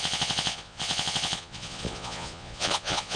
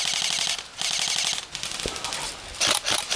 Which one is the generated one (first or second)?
first